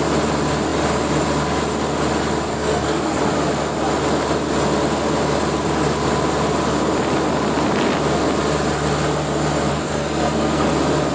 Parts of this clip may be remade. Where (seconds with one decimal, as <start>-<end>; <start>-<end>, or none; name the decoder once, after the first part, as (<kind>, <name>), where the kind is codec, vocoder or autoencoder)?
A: 2.5-3.2 (codec, SNAC); 9.7-10.7